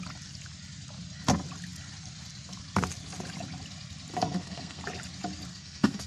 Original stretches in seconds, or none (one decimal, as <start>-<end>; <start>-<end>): 0.0-4.1; 4.8-5.5